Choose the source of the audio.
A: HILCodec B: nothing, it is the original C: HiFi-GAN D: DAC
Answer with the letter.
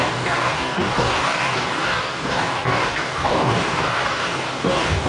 D